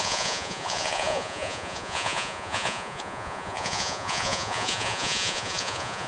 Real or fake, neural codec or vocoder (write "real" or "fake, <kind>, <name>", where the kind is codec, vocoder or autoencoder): fake, vocoder, Vocos